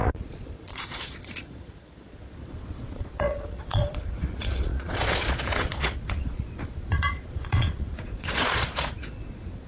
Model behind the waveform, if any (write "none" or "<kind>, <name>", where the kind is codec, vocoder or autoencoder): vocoder, Vocos